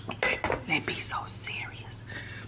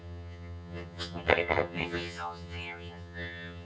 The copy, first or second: second